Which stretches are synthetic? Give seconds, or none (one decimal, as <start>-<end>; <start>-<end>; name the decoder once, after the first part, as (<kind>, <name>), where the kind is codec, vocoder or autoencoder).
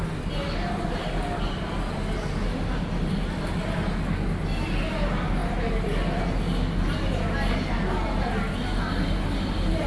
none